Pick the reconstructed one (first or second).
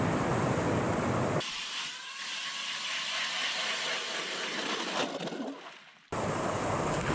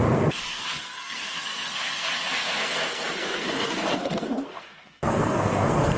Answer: second